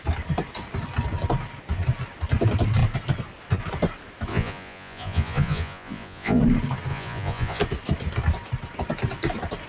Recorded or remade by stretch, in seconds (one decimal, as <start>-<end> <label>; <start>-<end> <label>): 0.0-4.3 recorded; 4.3-6.4 remade; 6.4-6.9 recorded; 6.9-7.6 remade; 7.6-9.7 recorded

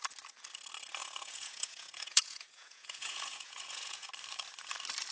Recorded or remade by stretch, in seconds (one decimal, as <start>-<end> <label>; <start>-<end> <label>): 0.0-1.0 recorded; 1.0-4.1 remade; 4.1-5.1 recorded